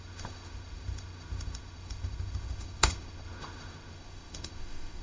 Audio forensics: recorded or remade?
remade